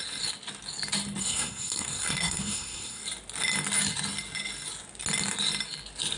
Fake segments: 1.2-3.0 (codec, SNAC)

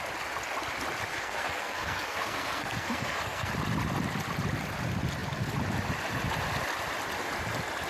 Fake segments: 1.1-3.5 (codec, SNAC)

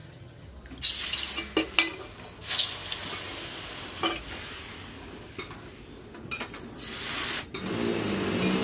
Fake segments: 0.0-0.5 (vocoder, HiFi-GAN)

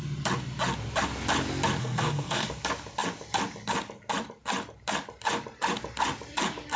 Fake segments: 1.8-2.5 (codec, SNAC)

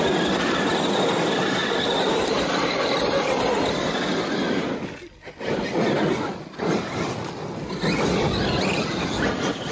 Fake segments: 1.6-3.4 (vocoder, BigVGAN v2)